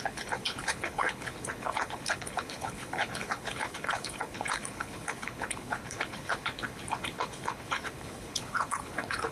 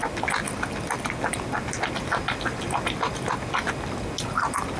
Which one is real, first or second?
second